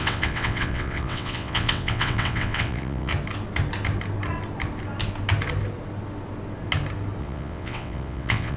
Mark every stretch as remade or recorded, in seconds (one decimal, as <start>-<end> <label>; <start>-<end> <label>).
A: 0.0-3.1 remade; 3.1-7.2 recorded; 7.2-8.6 remade